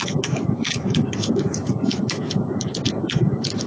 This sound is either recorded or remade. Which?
remade